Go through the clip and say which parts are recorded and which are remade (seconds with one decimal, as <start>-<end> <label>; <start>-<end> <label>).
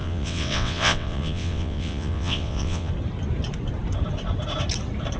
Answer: 0.0-2.9 remade; 2.9-5.2 recorded